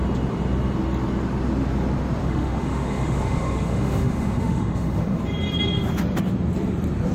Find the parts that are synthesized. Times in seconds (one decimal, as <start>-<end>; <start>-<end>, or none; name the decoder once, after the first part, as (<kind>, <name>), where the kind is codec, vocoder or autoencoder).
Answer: 2.2-5.2 (autoencoder, DAC-VAE)